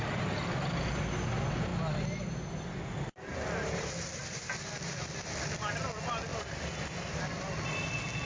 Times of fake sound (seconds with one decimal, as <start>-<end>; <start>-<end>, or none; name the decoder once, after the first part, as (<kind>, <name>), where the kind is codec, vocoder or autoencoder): 6.3-7.2 (vocoder, BigVGAN v2)